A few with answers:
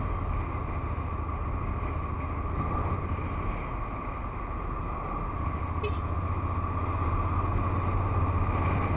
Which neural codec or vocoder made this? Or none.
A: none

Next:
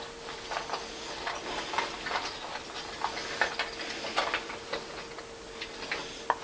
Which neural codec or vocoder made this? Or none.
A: none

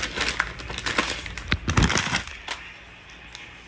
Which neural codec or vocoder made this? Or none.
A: none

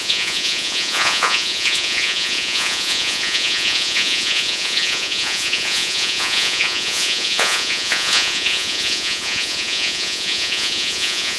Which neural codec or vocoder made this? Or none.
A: vocoder, Vocos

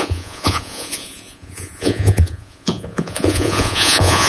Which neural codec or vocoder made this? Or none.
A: vocoder, Vocos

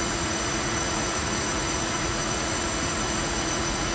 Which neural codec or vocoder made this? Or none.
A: vocoder, Vocos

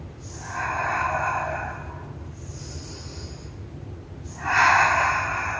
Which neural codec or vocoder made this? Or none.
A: none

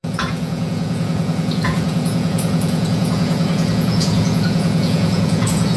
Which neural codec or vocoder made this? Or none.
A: vocoder, Vocos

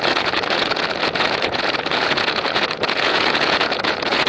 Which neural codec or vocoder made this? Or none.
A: vocoder, Vocos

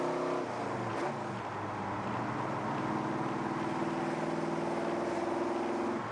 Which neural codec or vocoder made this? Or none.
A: none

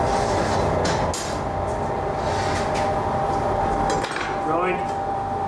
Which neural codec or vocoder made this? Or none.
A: none